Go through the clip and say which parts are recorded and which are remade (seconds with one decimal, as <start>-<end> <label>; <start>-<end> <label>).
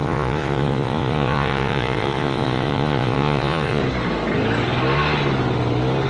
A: 0.0-3.8 remade; 3.8-6.1 recorded